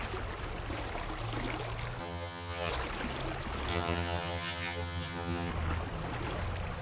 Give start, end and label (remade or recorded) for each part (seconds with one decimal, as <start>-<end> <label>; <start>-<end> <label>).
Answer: 0.0-2.0 recorded; 2.0-2.7 remade; 2.7-3.7 recorded; 3.7-5.5 remade; 5.5-6.8 recorded